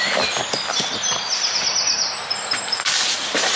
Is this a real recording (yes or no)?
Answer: yes